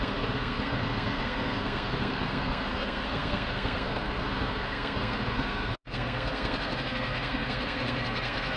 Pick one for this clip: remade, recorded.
remade